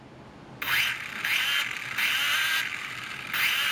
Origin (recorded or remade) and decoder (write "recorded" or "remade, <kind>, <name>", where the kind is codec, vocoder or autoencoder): recorded